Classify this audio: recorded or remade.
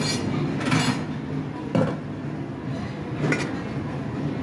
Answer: recorded